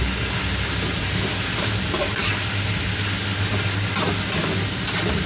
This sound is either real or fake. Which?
real